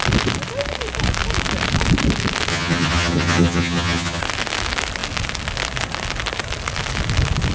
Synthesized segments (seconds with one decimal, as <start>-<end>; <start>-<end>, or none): 2.5-4.2